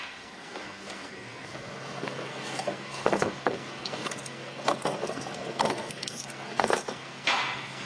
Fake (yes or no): yes